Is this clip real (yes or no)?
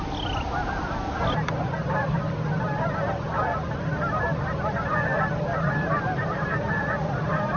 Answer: yes